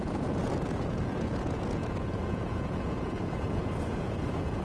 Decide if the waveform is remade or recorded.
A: remade